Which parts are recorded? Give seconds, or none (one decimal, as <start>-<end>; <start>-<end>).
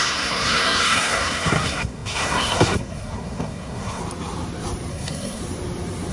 4.0-4.9; 5.4-6.1